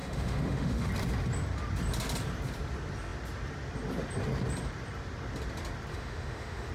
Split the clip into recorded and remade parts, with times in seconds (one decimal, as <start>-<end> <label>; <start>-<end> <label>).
0.0-0.9 remade; 0.9-5.9 recorded; 5.9-6.7 remade